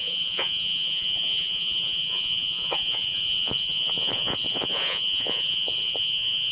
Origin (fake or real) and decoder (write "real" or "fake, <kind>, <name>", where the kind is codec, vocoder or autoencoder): fake, vocoder, Vocos